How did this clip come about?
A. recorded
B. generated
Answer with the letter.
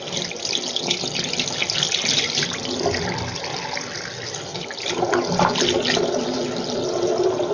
A